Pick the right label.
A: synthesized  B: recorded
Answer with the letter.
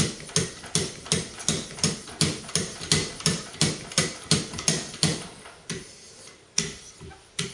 B